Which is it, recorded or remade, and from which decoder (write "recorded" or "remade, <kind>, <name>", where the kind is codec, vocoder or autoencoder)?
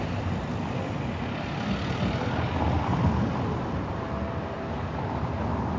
recorded